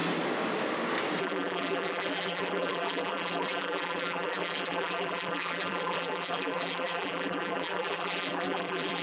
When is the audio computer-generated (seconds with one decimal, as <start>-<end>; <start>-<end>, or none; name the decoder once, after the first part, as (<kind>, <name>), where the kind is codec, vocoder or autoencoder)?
1.2-9.0 (vocoder, BigVGAN v2)